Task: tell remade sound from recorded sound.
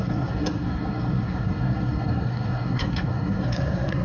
remade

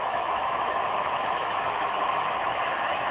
remade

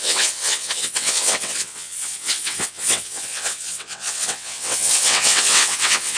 remade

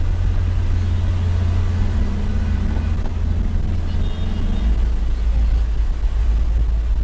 recorded